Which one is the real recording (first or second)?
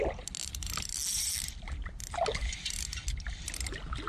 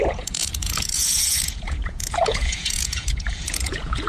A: first